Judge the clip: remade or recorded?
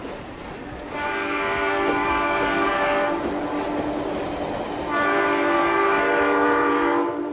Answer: recorded